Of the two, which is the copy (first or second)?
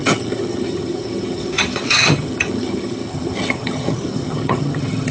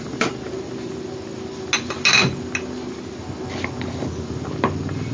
first